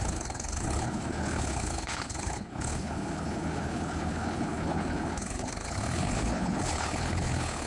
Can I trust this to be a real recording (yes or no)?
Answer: no